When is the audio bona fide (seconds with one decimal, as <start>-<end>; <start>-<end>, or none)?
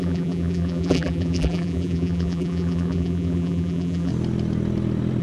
4.1-5.2